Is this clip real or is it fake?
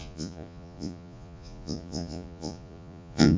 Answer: fake